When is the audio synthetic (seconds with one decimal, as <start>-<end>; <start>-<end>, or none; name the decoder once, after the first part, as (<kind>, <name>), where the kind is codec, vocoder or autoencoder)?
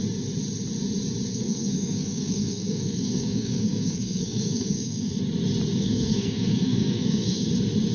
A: 1.3-5.2 (codec, SNAC); 5.8-7.5